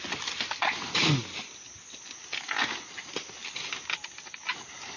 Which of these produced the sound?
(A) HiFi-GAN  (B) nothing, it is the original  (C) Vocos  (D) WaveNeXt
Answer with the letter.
B